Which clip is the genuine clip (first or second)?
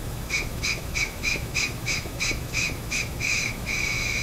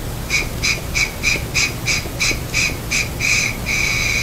second